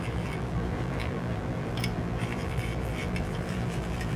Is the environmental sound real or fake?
fake